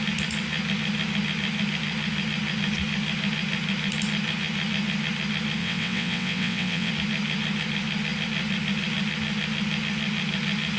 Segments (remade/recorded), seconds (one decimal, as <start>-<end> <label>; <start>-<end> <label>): 0.0-5.6 recorded; 5.6-6.9 remade; 6.9-10.8 recorded